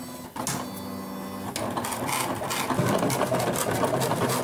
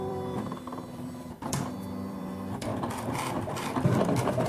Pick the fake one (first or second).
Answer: second